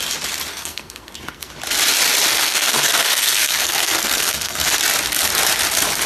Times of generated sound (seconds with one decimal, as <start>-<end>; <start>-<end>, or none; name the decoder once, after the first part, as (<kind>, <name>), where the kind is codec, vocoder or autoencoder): 0.5-1.5 (codec, SNAC); 2.3-4.7